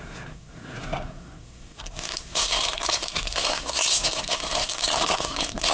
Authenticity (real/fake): fake